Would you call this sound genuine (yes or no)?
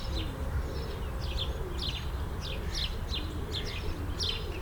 yes